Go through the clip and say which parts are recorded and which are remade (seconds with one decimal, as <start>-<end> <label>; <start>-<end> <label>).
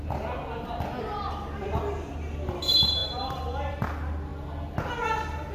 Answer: 0.0-5.5 recorded